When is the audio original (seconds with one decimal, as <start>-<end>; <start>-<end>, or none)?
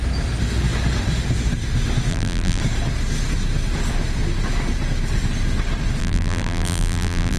0.0-2.1; 2.6-6.0